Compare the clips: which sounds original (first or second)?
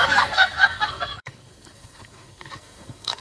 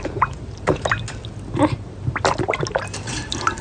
second